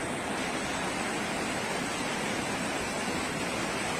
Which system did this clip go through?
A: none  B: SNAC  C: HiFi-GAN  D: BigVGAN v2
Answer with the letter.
D